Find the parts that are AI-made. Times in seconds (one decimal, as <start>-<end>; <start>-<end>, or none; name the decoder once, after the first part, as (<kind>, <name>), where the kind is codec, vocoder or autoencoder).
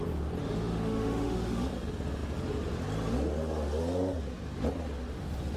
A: 0.4-1.7 (autoencoder, DAC-VAE)